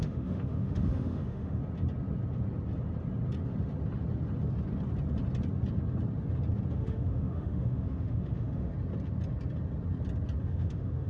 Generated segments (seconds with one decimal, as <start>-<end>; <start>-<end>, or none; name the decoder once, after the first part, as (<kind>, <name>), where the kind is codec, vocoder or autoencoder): 0.0-1.6 (autoencoder, DAC-VAE); 6.7-8.7; 10.4-11.1